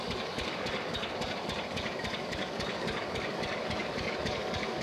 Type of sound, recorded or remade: remade